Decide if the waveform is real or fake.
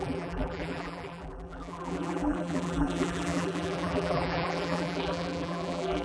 fake